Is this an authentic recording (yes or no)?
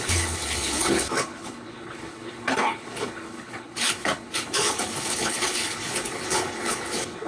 no